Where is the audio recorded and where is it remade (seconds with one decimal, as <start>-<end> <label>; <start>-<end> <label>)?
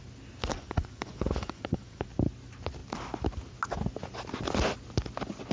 0.0-0.5 recorded; 0.5-2.0 remade; 2.0-5.5 recorded